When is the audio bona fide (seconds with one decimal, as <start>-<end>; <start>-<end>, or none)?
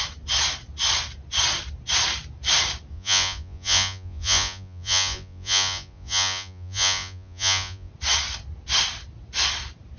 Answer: 0.0-2.9; 7.9-10.0